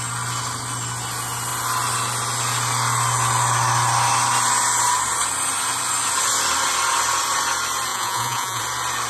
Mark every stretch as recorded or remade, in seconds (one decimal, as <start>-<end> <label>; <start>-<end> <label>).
0.0-7.9 recorded; 7.9-8.6 remade; 8.6-9.1 recorded

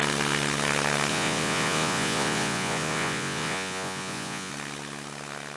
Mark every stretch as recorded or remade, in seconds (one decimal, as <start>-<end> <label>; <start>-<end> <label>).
0.0-1.1 recorded; 1.1-4.5 remade; 4.5-5.6 recorded

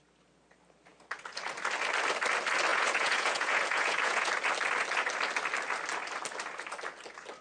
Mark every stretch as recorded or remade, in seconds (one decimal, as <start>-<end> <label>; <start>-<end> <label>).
0.0-2.7 recorded; 2.7-4.3 remade; 4.3-7.4 recorded

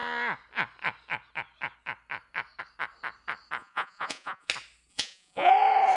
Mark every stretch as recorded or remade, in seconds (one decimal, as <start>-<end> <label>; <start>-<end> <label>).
0.0-3.6 recorded; 3.6-4.5 remade; 4.5-4.9 recorded; 4.9-5.5 remade; 5.5-6.0 recorded

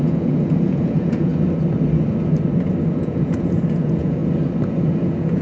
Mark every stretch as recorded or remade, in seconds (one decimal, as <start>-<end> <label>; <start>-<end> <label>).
0.0-1.3 remade; 1.3-2.8 recorded; 2.8-4.2 remade; 4.2-4.8 recorded; 4.8-5.4 remade

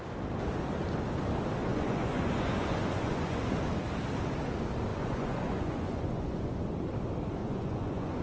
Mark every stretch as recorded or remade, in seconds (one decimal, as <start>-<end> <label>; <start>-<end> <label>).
0.0-1.7 recorded; 1.7-3.5 remade; 3.5-4.9 recorded; 4.9-6.6 remade; 6.6-7.4 recorded; 7.4-8.2 remade

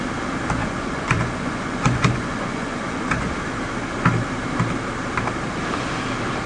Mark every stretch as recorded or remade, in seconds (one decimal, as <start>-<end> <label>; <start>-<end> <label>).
0.0-0.6 recorded; 0.6-3.3 remade; 3.3-6.5 recorded